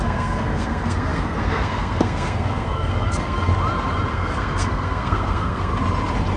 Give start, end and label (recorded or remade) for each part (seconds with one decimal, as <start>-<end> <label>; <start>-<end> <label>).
0.0-3.5 remade; 3.5-4.1 recorded; 4.1-5.7 remade; 5.7-6.4 recorded